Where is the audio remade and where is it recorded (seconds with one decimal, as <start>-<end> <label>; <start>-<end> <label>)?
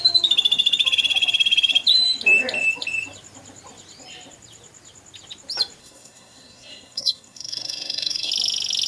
0.0-5.8 recorded; 5.8-8.3 remade; 8.3-8.9 recorded